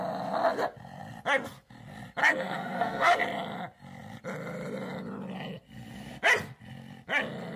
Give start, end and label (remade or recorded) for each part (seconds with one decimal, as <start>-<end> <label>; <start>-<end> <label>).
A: 0.0-2.2 recorded; 2.2-3.2 remade; 3.2-7.6 recorded